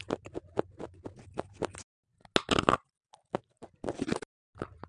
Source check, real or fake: real